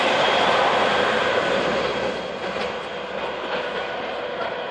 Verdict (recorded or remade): recorded